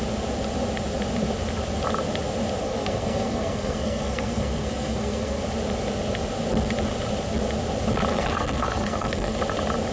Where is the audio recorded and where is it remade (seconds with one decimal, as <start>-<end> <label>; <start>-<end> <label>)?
0.0-2.6 recorded; 2.6-5.4 remade; 5.4-8.1 recorded; 8.1-9.4 remade; 9.4-9.9 recorded